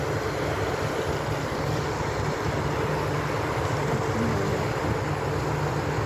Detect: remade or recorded recorded